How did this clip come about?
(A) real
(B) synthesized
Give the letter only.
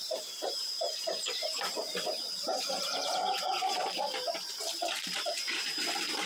B